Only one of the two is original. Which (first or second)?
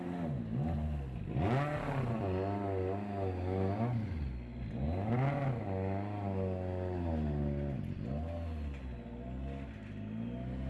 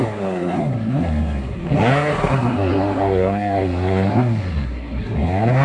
first